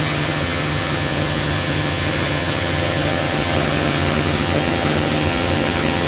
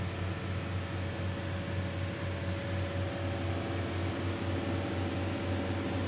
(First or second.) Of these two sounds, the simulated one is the first